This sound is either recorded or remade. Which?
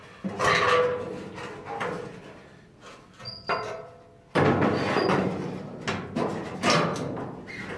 recorded